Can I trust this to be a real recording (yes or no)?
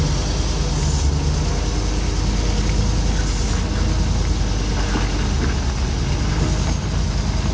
yes